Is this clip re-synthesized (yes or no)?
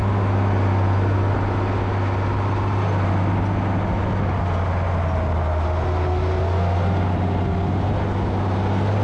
no